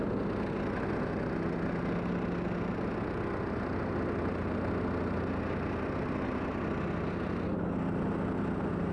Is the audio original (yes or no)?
yes